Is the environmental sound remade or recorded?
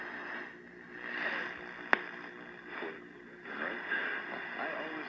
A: recorded